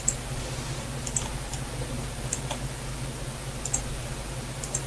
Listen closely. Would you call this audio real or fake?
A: real